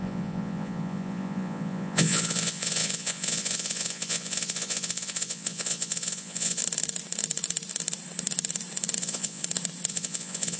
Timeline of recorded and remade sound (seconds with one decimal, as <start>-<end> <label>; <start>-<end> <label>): 0.0-6.6 remade; 6.6-9.0 recorded; 9.0-9.4 remade; 9.4-9.9 recorded; 9.9-10.6 remade